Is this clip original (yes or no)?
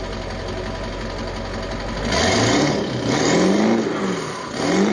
yes